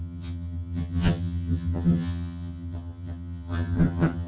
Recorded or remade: remade